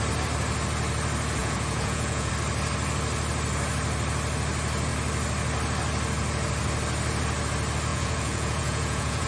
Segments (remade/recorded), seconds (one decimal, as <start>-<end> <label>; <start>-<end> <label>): 0.0-1.4 recorded; 1.4-2.3 remade; 2.3-7.9 recorded; 7.9-9.3 remade